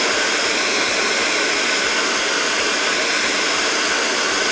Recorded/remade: recorded